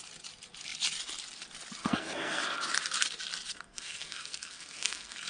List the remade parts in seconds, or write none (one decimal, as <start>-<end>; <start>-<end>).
1.8-2.4; 3.5-5.3